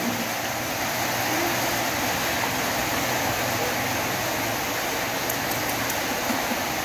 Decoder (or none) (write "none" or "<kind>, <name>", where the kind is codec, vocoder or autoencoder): none